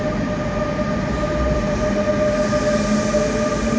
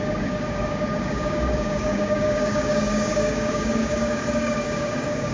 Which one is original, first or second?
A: first